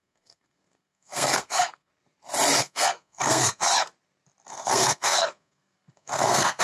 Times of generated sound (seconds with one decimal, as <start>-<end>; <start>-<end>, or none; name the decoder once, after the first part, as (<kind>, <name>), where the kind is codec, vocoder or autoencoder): 0.0-1.9 (codec, SNAC); 2.6-3.7; 4.5-6.6